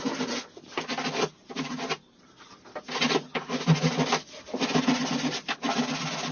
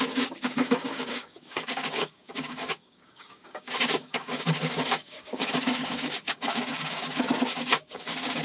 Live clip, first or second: first